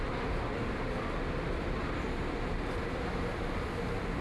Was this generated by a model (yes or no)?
no